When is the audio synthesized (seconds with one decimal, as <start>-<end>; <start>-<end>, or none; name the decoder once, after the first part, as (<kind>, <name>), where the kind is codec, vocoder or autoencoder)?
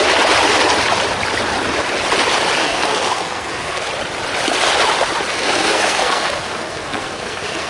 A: 2.6-3.9 (codec, SNAC); 5.3-7.7